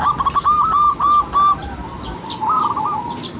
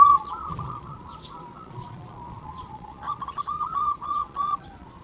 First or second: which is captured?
first